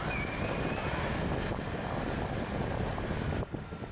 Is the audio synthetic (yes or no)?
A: no